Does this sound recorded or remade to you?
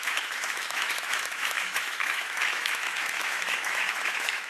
remade